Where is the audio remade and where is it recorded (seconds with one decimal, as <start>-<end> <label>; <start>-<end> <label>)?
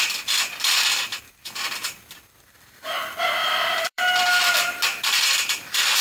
0.0-3.4 recorded; 3.4-4.2 remade; 4.2-6.0 recorded